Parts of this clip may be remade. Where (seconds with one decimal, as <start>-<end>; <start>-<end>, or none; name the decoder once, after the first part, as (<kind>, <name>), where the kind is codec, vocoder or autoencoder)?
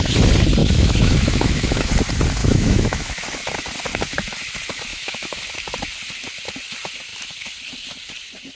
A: 0.6-1.9 (autoencoder, DAC-VAE); 2.4-3.1; 4.9-5.4